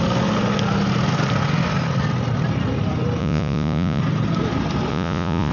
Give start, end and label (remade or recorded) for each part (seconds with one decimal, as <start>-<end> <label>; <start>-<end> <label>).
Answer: 0.0-3.2 recorded; 3.2-4.0 remade; 4.0-4.9 recorded; 4.9-5.5 remade